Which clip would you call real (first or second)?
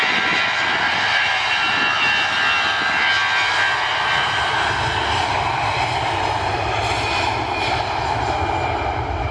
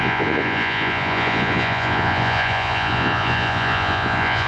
first